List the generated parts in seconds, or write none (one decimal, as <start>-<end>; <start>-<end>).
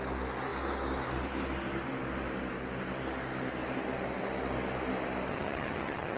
5.3-6.2